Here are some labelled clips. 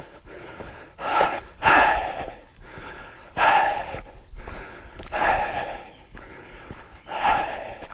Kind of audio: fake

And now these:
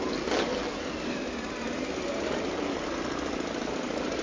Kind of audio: real